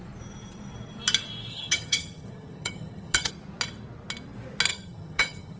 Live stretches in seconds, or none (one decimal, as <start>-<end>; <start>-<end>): 0.0-1.5; 3.3-4.7